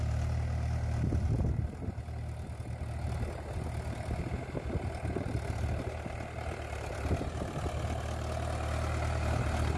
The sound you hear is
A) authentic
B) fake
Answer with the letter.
A